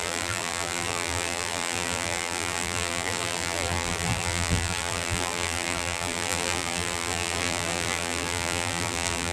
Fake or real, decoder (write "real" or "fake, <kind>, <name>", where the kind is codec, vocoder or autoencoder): fake, vocoder, BigVGAN v2